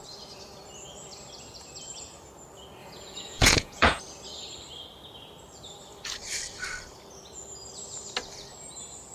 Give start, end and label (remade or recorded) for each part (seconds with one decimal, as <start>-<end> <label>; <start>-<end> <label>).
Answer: 0.0-2.8 recorded; 2.8-4.0 remade; 4.0-9.1 recorded